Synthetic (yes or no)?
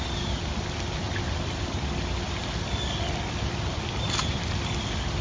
no